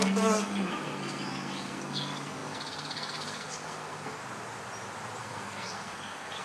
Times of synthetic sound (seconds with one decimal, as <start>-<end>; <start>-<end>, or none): 0.0-4.2; 5.2-6.4